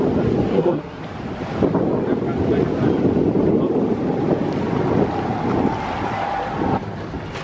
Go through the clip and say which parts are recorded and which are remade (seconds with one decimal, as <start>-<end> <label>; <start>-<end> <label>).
0.0-0.5 recorded; 0.5-1.0 remade; 1.0-7.4 recorded